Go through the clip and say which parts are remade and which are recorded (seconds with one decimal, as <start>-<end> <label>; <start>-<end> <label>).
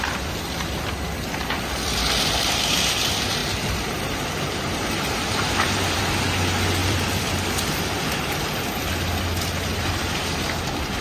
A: 0.0-3.4 recorded; 3.4-6.0 remade; 6.0-6.8 recorded; 6.8-7.3 remade; 7.3-11.0 recorded